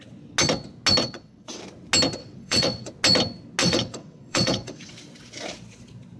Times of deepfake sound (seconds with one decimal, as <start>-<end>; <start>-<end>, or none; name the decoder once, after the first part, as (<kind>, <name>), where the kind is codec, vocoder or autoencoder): 1.0-1.6 (vocoder, WaveNeXt); 2.2-2.9; 3.6-4.9